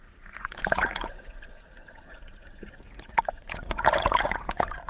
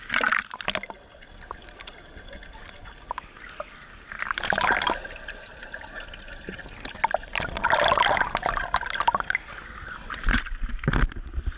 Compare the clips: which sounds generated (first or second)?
first